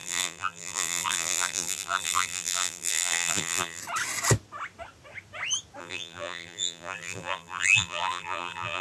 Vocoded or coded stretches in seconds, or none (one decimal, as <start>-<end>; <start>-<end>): 0.0-3.8; 5.8-8.8